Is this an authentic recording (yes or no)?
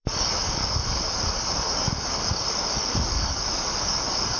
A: no